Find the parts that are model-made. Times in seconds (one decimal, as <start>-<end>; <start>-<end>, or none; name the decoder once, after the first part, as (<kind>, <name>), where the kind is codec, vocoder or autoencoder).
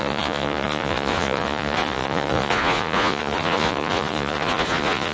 0.0-5.1 (vocoder, Vocos)